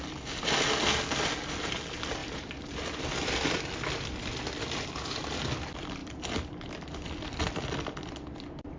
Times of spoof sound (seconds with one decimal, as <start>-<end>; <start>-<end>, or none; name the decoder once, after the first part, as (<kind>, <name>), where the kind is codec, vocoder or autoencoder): none